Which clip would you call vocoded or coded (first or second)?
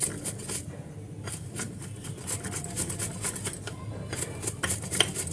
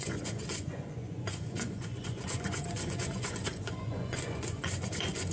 second